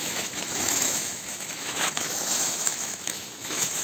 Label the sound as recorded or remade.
remade